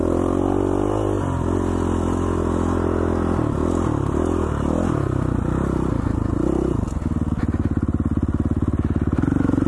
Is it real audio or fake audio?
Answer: real